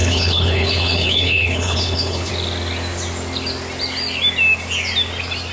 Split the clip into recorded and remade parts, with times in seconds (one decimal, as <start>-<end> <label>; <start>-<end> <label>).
0.0-2.3 remade; 2.3-5.5 recorded

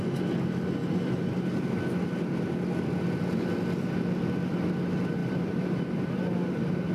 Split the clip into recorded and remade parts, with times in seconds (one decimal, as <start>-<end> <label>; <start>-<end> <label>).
0.0-0.8 recorded; 0.8-1.8 remade; 1.8-5.2 recorded; 5.2-6.9 remade

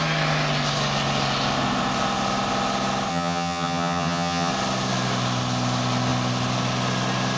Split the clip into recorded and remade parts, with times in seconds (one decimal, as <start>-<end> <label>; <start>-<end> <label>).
0.0-3.1 recorded; 3.1-4.5 remade; 4.5-7.4 recorded

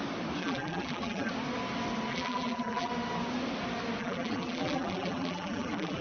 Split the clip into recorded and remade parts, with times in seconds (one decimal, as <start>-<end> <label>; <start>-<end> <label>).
0.0-0.4 recorded; 0.4-1.3 remade; 1.3-2.1 recorded; 2.1-2.9 remade; 2.9-4.0 recorded; 4.0-6.0 remade

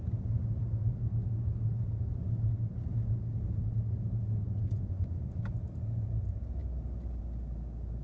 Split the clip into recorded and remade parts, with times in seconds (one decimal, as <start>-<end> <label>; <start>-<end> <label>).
0.0-4.4 recorded; 4.4-5.4 remade; 5.4-8.0 recorded